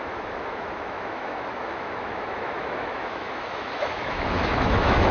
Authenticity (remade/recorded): remade